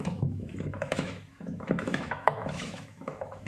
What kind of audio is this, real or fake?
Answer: fake